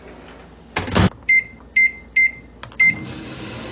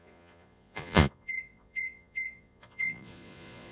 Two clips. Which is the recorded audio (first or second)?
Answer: first